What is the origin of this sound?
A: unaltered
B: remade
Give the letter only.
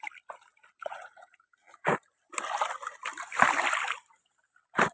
A